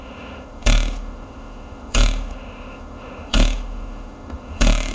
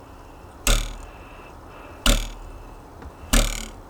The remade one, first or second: first